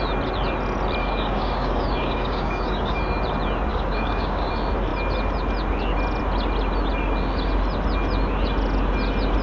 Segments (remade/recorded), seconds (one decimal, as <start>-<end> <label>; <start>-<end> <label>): 0.0-1.0 recorded; 1.0-3.0 remade; 3.0-3.7 recorded; 3.7-4.5 remade; 4.5-9.4 recorded